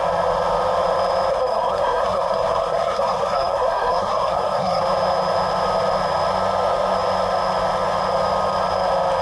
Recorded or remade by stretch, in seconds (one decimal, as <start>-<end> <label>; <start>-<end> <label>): 0.0-1.3 recorded; 1.3-4.8 remade; 4.8-9.2 recorded

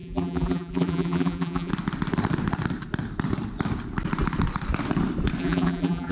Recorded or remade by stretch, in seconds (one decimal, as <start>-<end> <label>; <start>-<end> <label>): 0.0-1.7 remade; 1.7-5.4 recorded; 5.4-6.1 remade

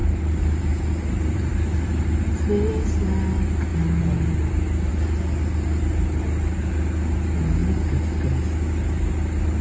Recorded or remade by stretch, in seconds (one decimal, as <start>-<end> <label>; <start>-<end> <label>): 0.0-9.6 recorded

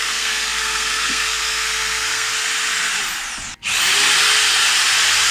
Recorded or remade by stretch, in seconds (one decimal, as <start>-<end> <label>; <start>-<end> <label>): 0.0-2.3 remade; 2.3-5.3 recorded